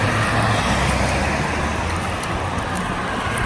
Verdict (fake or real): real